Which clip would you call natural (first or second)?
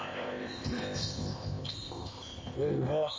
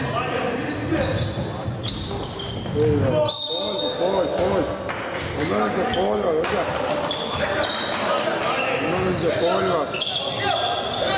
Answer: second